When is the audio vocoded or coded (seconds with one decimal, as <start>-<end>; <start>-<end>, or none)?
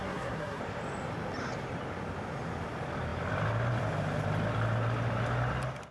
0.0-0.6